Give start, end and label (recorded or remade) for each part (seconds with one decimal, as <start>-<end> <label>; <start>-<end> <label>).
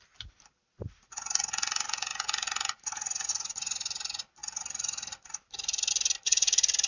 0.0-6.9 recorded